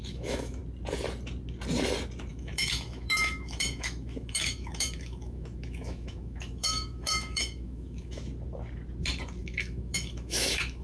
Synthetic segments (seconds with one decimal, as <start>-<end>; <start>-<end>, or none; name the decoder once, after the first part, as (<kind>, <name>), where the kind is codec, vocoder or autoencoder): 0.0-0.6 (autoencoder, DAC-VAE); 2.3-8.3; 9.4-10.8